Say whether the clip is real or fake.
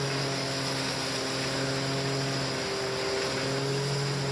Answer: real